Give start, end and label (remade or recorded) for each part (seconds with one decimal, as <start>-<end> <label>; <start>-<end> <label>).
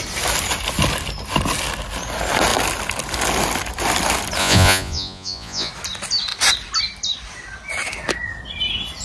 0.0-4.4 recorded; 4.4-5.7 remade; 5.7-9.0 recorded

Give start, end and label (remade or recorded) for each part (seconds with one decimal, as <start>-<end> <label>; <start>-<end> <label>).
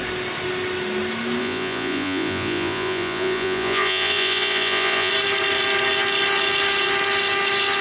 0.0-1.4 recorded; 1.4-5.1 remade; 5.1-7.8 recorded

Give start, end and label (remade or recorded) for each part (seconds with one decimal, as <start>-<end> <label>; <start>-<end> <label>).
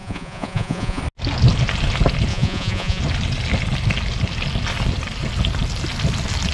0.0-1.0 remade; 1.0-2.3 recorded; 2.3-3.0 remade; 3.0-6.5 recorded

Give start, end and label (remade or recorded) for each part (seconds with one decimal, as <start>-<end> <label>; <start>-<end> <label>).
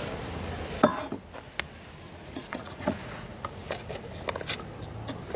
0.0-2.2 recorded; 2.2-3.9 remade; 3.9-5.4 recorded